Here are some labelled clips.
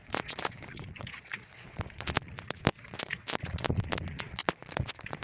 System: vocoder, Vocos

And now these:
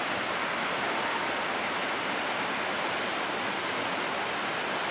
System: none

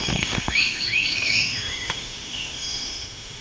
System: autoencoder, DAC-VAE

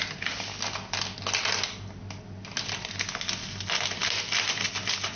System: none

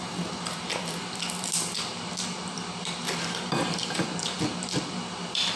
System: none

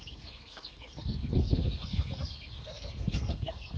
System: codec, SNAC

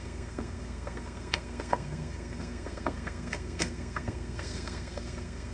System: codec, SNAC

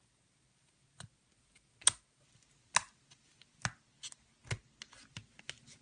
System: none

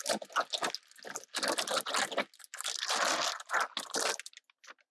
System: none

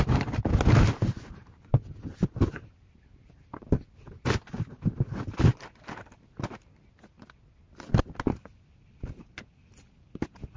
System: none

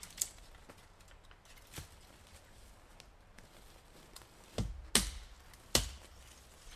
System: none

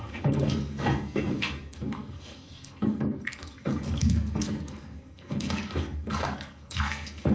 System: codec, SNAC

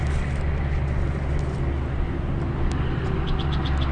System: none